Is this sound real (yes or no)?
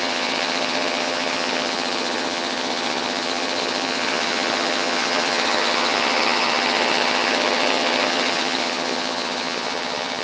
no